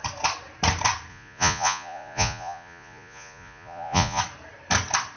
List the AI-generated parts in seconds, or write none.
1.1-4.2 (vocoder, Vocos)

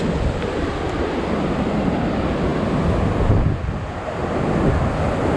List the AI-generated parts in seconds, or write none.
none

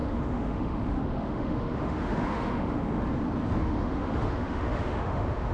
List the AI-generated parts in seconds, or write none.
0.0-3.0 (autoencoder, DAC-VAE); 3.6-5.5

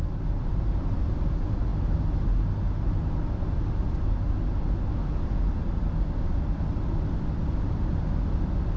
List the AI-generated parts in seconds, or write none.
none

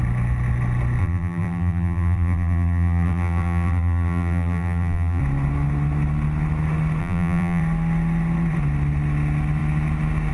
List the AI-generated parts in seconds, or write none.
1.0-5.2 (vocoder, BigVGAN v2); 7.0-7.6

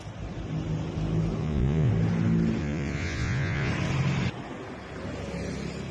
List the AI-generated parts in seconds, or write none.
1.4-1.9 (vocoder, Vocos); 2.6-3.7

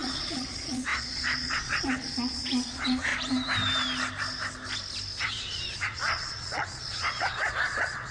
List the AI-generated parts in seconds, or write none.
0.0-3.1 (vocoder, Vocos); 5.2-8.1